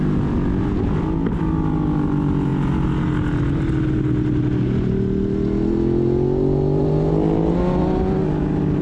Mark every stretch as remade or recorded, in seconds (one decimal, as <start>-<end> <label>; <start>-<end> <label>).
0.0-8.8 recorded